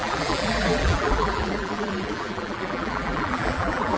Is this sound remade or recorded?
remade